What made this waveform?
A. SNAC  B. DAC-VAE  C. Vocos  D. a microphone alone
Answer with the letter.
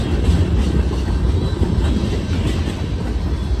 D